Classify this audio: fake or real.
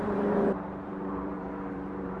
fake